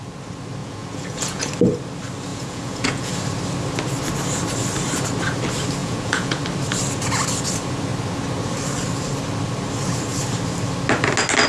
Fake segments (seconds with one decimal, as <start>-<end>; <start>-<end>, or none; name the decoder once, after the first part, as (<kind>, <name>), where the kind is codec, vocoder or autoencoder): 0.6-1.5 (vocoder, Vocos); 2.3-3.1; 5.8-6.4